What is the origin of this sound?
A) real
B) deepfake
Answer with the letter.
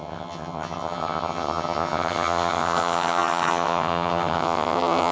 B